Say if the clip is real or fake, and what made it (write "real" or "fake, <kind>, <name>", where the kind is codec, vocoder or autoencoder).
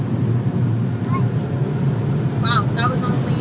real